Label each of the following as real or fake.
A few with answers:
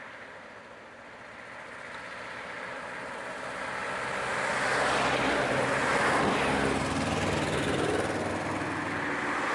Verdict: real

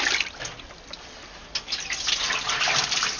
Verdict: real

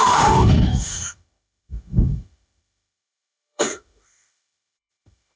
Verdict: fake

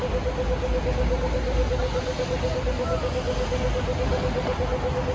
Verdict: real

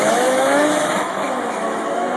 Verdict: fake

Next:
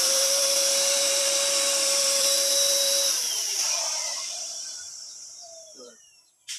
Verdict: fake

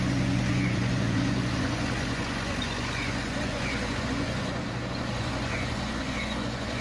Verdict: fake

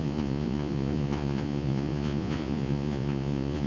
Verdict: fake